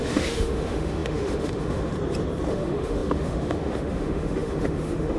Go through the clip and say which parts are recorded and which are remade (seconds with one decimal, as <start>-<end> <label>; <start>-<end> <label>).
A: 0.0-1.9 remade; 1.9-2.5 recorded; 2.5-5.2 remade